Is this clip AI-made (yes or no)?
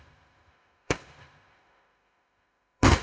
yes